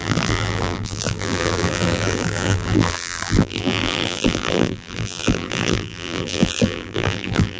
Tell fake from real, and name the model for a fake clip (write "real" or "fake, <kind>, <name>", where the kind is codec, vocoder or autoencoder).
fake, vocoder, BigVGAN v2